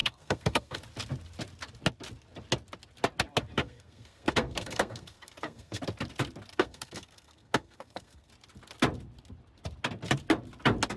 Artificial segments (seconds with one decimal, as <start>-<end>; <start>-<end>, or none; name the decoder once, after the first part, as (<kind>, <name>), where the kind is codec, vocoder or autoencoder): 0.0-0.8 (codec, SNAC); 3.6-5.8; 6.5-8.3